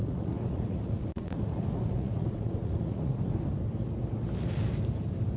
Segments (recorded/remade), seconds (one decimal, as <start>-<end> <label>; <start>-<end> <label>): 0.0-3.2 remade; 3.2-5.4 recorded